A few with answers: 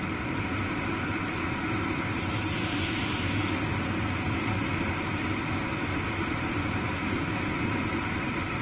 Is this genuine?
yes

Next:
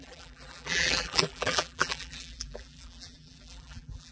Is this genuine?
no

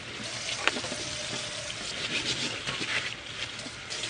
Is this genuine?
yes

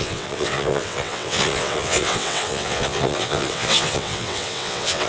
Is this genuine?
no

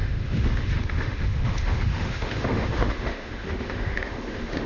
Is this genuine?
no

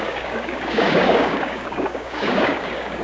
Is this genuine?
no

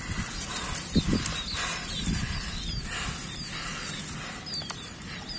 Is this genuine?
yes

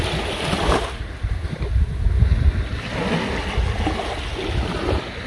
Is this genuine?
yes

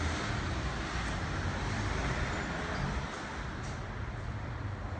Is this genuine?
yes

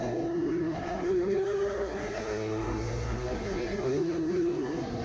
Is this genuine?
no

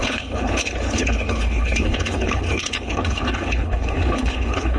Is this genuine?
no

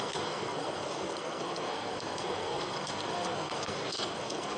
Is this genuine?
no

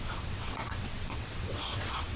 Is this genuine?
no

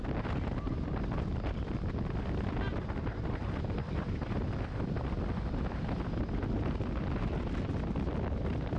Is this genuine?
yes